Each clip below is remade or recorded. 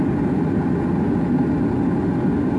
recorded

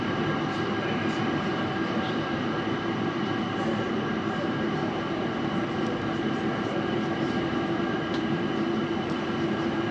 remade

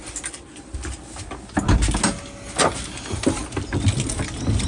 recorded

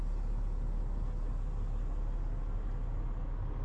recorded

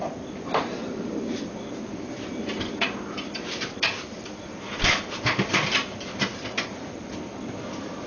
remade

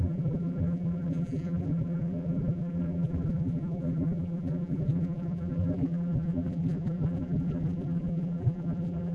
remade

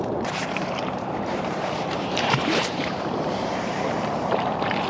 remade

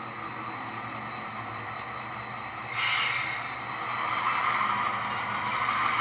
recorded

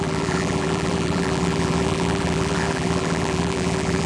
remade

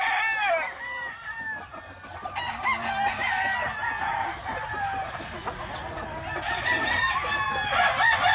recorded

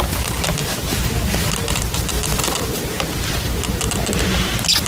recorded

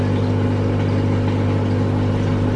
recorded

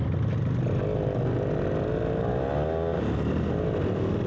recorded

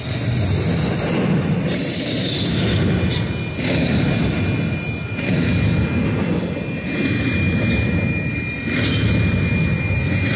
recorded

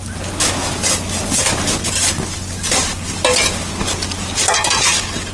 recorded